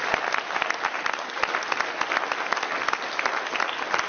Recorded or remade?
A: recorded